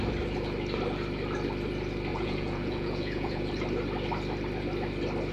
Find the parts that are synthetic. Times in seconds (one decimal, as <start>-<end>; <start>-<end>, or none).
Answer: 2.1-3.5